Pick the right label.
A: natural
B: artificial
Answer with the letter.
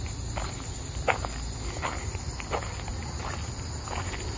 A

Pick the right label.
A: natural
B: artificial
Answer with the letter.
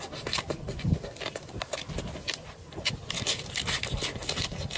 A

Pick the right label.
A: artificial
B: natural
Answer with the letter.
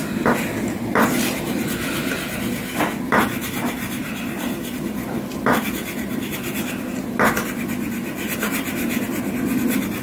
B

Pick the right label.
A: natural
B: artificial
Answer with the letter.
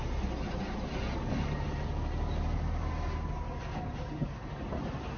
A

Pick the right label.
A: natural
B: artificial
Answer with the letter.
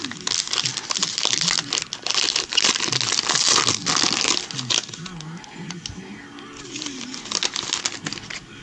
A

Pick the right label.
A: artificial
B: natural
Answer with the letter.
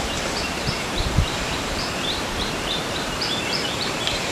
A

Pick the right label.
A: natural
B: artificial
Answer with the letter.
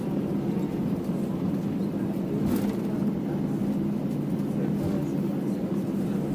A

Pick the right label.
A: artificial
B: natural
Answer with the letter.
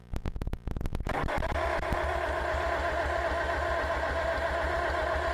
B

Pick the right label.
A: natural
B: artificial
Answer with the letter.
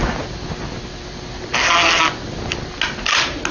A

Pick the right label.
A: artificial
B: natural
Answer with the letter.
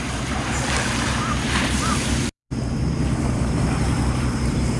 A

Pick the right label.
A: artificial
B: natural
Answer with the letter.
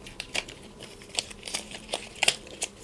A